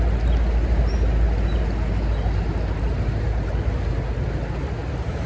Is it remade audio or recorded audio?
recorded